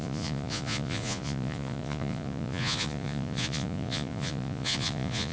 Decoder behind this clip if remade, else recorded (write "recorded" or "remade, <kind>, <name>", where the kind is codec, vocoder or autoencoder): remade, vocoder, Vocos